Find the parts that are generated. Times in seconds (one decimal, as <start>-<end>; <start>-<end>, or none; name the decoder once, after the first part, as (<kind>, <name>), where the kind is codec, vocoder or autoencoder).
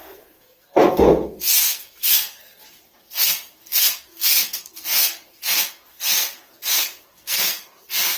0.0-8.2 (codec, SNAC)